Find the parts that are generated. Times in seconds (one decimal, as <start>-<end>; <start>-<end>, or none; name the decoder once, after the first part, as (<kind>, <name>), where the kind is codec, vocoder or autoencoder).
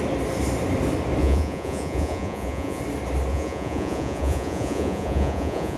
1.2-2.8 (vocoder, Vocos); 3.3-5.8